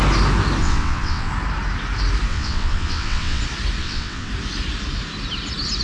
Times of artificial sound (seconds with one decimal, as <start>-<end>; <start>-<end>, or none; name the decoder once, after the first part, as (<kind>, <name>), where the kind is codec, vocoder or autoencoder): 0.6-1.3 (vocoder, WaveNeXt); 2.3-3.4; 3.8-4.3